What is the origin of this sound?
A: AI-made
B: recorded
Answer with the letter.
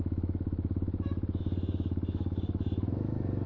A